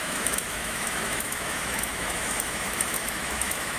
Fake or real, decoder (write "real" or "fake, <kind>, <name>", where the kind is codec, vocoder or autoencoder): fake, autoencoder, DAC-VAE